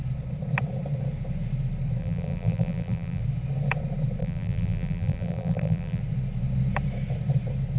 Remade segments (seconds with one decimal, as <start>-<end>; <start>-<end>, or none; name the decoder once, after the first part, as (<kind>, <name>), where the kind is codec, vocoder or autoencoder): 2.0-3.2 (vocoder, BigVGAN v2); 4.2-6.0